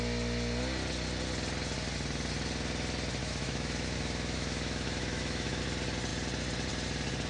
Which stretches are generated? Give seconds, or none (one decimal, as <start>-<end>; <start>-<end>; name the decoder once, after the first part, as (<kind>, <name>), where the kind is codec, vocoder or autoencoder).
3.2-5.6 (autoencoder, DAC-VAE)